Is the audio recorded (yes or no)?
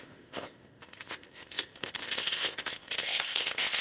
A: no